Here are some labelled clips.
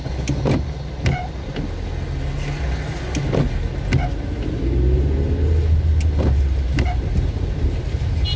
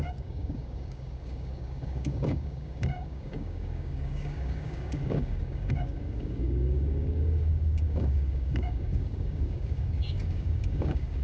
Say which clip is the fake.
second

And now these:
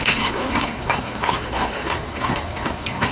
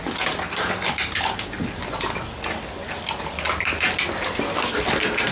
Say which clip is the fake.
first